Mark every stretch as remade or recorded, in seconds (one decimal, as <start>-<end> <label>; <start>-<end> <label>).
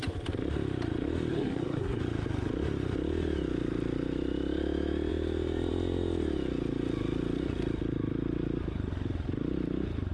0.0-1.3 recorded; 1.3-2.0 remade; 2.0-10.1 recorded